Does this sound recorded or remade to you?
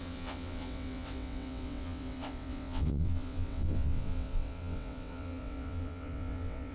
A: remade